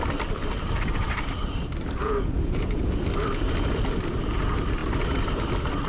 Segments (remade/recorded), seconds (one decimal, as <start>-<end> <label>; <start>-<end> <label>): 0.0-2.0 recorded; 2.0-3.0 remade; 3.0-5.9 recorded